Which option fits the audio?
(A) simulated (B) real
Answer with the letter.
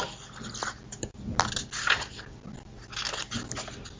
B